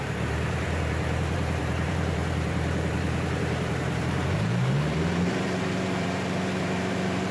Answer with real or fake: fake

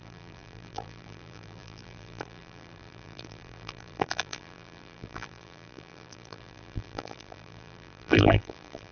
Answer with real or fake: fake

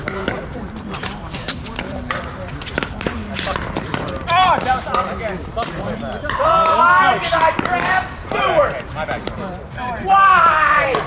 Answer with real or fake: fake